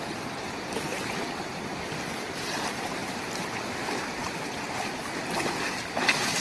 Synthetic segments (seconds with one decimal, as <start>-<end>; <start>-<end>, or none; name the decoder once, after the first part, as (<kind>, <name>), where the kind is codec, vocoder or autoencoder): none

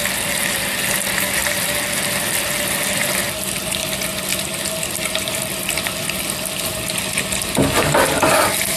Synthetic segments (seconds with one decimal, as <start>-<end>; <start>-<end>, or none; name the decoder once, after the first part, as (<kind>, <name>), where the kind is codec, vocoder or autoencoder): 1.4-2.0 (vocoder, BigVGAN v2); 4.3-7.2

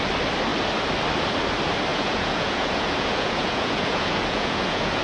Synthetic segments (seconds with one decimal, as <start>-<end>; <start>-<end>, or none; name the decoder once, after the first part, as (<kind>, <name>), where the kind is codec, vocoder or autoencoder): 1.9-5.0 (vocoder, Vocos)